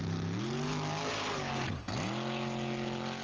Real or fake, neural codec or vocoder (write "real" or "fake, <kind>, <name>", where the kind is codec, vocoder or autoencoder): real